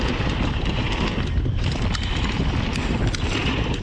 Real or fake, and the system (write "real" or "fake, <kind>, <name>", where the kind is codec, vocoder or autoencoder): real